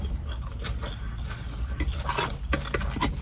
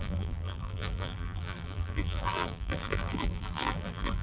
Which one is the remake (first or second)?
second